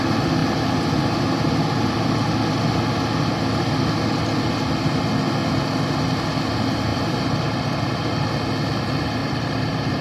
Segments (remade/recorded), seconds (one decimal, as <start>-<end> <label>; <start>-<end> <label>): 0.0-6.9 recorded; 6.9-8.3 remade; 8.3-9.2 recorded; 9.2-10.0 remade